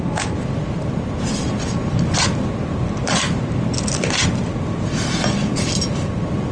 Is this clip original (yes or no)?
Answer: yes